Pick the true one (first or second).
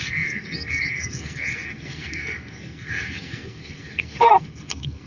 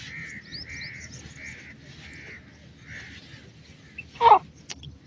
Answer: second